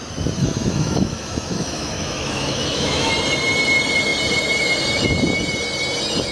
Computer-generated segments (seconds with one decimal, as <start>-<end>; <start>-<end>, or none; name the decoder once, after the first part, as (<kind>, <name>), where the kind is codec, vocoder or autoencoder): 0.4-3.1 (autoencoder, DAC-VAE)